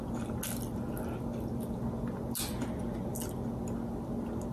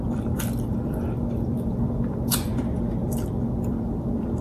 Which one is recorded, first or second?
first